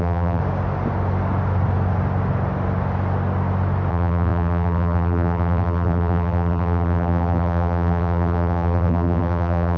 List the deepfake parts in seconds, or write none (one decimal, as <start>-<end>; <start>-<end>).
0.0-0.4; 3.9-9.8